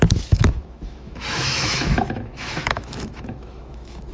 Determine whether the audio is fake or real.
fake